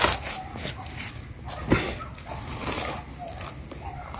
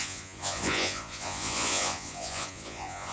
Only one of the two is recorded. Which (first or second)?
first